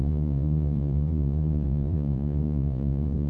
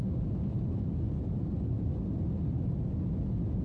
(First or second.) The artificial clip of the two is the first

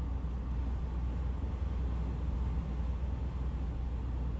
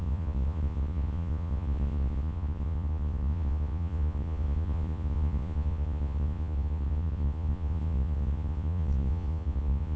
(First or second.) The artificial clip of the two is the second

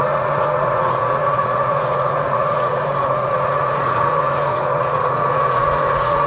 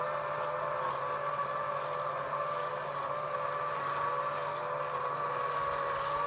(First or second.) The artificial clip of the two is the first